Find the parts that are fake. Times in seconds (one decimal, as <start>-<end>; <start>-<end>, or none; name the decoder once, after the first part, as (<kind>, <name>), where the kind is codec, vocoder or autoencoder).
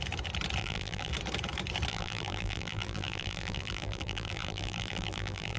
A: 0.6-1.1 (vocoder, BigVGAN v2); 1.9-5.6